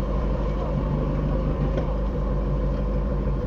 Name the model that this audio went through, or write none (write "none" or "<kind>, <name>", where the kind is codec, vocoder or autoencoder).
vocoder, BigVGAN v2